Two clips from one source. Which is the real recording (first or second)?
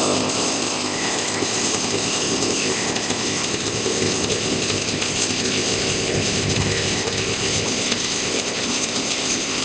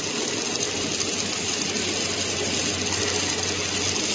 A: second